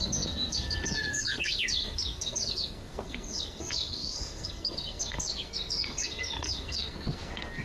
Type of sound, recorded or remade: remade